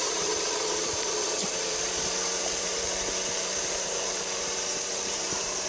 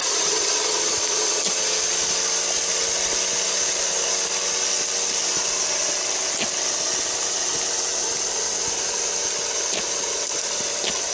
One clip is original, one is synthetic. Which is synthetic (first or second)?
first